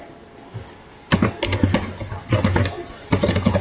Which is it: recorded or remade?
recorded